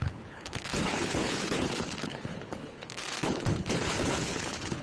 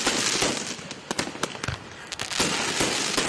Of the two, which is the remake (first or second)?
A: first